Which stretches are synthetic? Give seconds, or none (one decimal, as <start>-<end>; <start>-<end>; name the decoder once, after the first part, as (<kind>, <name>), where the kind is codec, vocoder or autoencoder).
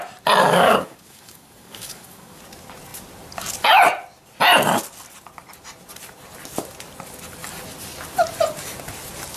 0.4-2.4 (codec, DAC)